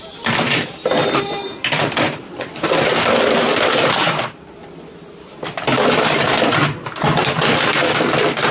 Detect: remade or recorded remade